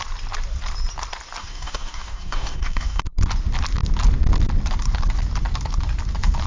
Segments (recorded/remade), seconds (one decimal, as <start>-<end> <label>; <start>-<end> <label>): 0.0-1.4 recorded; 1.4-3.0 remade; 3.0-6.5 recorded